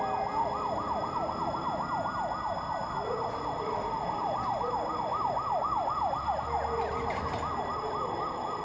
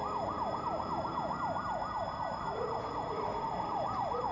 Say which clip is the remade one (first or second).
second